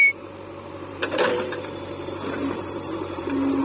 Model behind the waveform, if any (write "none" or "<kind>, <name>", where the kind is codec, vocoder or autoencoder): vocoder, BigVGAN v2